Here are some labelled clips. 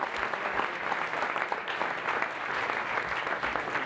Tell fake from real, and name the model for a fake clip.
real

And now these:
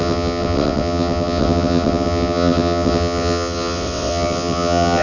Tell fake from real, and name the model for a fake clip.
fake, vocoder, WaveNeXt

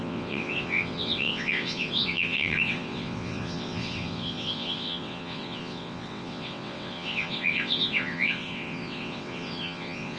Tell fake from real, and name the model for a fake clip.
fake, vocoder, WaveNeXt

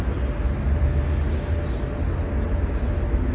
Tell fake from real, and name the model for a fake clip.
real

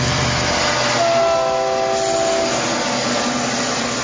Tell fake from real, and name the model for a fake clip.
real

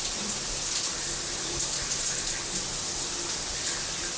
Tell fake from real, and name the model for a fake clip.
real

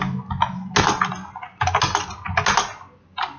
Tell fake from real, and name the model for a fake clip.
real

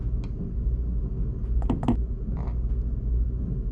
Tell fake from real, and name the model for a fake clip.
real